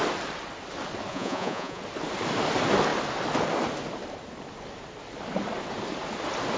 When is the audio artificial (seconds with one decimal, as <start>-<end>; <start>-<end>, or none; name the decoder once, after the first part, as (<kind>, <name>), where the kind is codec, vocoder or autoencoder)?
1.1-1.8 (vocoder, Vocos)